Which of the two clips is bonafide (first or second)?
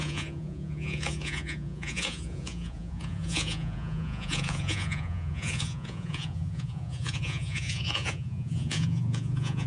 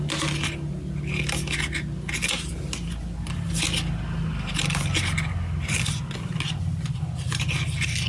second